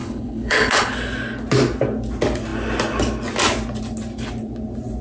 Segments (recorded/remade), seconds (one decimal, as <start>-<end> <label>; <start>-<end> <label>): 0.0-0.9 remade; 0.9-5.0 recorded